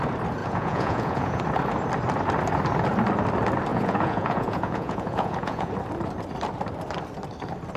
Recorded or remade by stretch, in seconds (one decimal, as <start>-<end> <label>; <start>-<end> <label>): 0.0-0.4 recorded; 0.4-1.4 remade; 1.4-3.7 recorded; 3.7-5.7 remade; 5.7-7.8 recorded